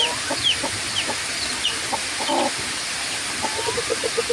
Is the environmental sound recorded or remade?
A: recorded